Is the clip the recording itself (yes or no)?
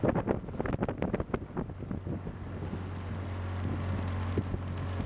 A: yes